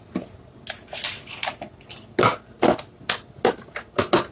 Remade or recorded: recorded